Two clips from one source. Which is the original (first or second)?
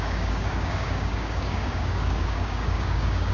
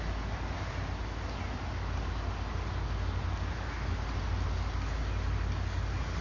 second